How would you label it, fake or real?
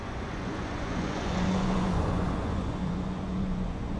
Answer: fake